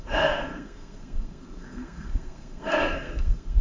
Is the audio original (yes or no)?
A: no